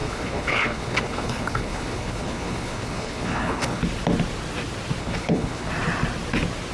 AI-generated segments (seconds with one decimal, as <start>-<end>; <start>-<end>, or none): 0.0-3.8; 5.0-5.7